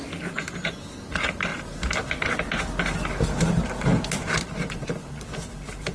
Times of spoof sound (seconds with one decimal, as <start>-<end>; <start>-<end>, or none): none